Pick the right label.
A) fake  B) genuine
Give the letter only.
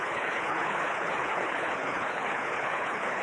A